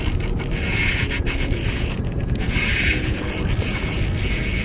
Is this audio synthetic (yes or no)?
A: yes